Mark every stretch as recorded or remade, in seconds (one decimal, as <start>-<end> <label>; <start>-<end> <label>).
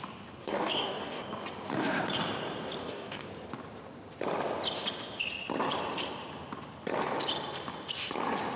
0.0-0.4 recorded; 0.4-1.2 remade; 1.2-2.8 recorded; 2.8-3.3 remade; 3.3-8.6 recorded